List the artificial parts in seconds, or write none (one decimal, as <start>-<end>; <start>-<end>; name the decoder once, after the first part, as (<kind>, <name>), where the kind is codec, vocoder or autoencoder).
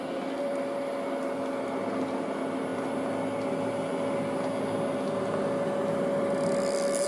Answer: none